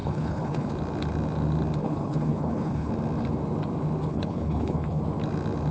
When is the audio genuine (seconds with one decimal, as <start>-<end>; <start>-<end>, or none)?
0.7-1.8; 2.9-4.1; 5.0-5.7